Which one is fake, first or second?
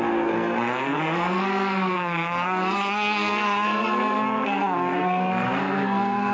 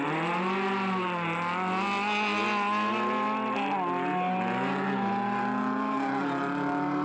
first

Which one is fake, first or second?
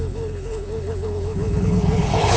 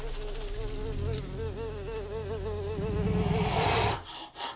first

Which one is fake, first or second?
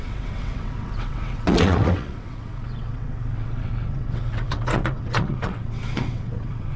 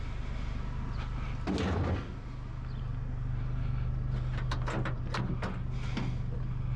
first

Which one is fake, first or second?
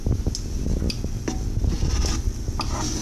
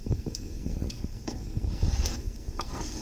second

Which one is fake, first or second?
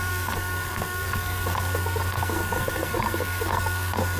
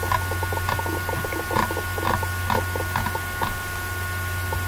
first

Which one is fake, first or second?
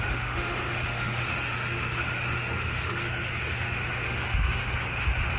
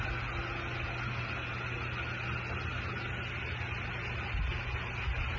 first